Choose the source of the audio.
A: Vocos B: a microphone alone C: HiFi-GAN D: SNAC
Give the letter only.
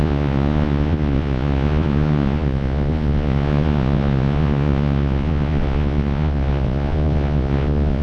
A